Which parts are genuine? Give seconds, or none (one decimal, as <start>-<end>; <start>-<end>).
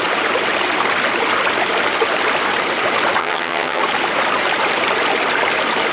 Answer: 0.0-3.2; 3.8-5.9